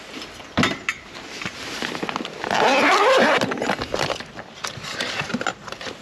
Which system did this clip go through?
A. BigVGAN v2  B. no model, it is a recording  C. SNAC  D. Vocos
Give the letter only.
B